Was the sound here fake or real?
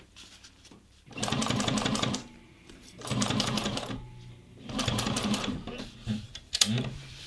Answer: fake